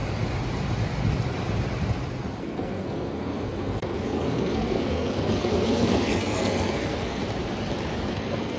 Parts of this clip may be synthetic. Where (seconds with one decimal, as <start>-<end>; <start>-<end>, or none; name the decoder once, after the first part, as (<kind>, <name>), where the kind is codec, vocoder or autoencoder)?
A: 2.4-7.2 (codec, SNAC); 8.1-8.6